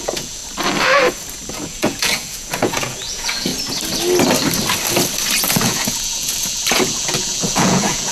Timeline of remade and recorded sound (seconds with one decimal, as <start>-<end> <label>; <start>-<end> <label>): 0.0-0.4 remade; 0.4-1.5 recorded; 1.5-3.5 remade; 3.5-5.4 recorded; 5.4-8.1 remade